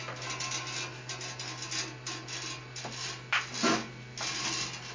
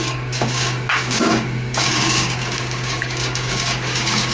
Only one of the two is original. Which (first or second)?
first